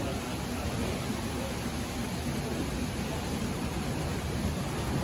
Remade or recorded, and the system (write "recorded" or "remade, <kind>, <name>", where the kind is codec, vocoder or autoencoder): recorded